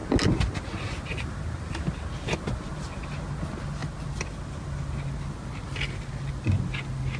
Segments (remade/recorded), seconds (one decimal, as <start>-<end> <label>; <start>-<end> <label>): 0.0-7.2 recorded